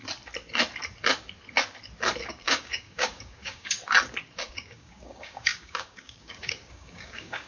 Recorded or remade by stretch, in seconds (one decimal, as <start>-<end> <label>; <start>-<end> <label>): 0.0-2.3 recorded; 2.3-3.8 remade; 3.8-4.5 recorded; 4.5-7.5 remade